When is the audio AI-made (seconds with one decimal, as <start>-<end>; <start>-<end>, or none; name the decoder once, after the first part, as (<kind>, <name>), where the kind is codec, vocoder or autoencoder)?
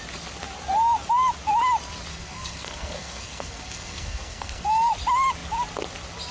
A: 2.1-4.9 (codec, SNAC)